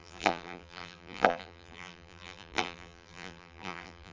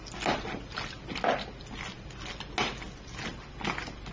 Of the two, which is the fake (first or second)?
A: first